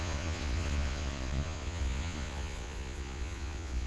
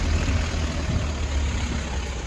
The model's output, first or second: first